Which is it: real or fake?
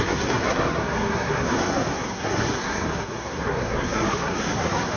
fake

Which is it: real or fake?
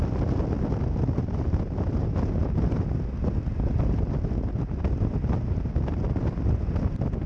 real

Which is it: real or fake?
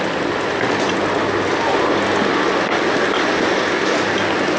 real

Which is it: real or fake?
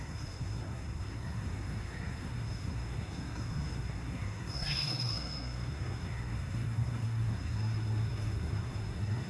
fake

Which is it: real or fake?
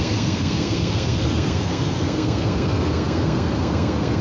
fake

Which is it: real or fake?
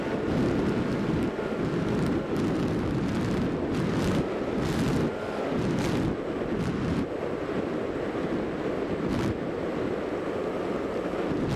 real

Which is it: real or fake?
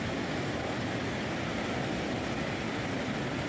real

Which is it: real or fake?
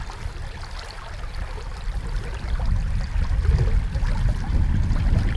real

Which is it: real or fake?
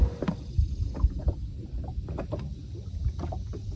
real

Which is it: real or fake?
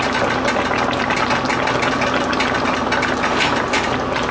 real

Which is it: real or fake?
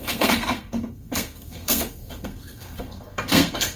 fake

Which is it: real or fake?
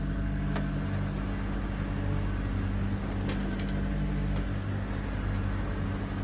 real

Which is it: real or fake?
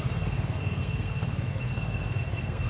fake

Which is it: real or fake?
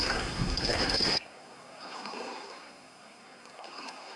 fake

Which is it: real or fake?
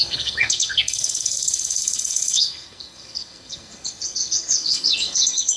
fake